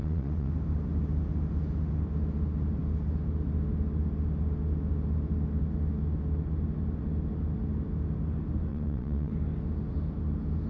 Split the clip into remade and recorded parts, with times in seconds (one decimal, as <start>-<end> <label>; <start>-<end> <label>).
0.0-0.5 remade; 0.5-8.7 recorded; 8.7-9.3 remade; 9.3-10.7 recorded